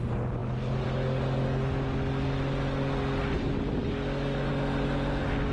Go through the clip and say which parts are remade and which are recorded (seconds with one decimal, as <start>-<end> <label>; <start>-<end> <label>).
0.0-5.5 recorded